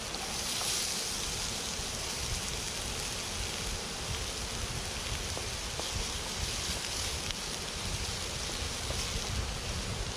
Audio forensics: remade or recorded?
recorded